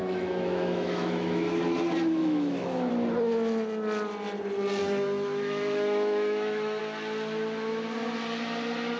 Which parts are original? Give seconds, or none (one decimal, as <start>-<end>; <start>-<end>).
1.6-2.2; 2.9-4.8; 6.8-9.0